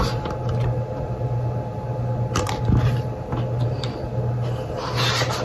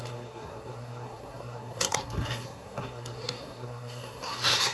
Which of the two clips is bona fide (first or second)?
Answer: first